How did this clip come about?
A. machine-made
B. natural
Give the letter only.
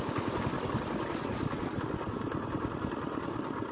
B